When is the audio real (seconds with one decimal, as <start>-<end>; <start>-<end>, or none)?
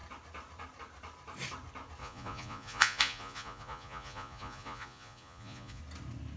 0.0-2.0; 5.8-6.4